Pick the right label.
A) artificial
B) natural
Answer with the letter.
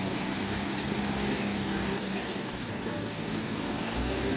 A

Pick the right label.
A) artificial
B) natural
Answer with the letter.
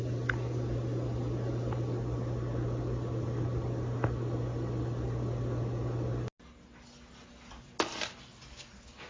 B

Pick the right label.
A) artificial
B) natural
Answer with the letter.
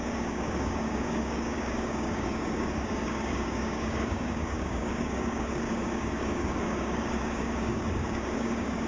A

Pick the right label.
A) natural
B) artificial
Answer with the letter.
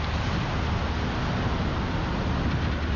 A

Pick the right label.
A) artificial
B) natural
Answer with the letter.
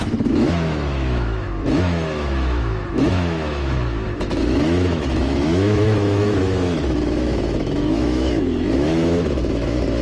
A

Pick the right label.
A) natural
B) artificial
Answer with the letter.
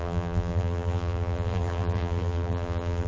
B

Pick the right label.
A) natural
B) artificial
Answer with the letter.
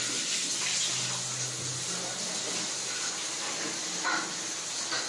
A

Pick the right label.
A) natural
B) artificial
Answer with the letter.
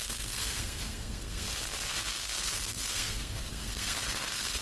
B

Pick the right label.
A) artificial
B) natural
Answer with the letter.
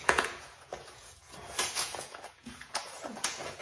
A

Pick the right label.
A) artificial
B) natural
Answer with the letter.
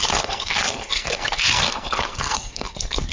A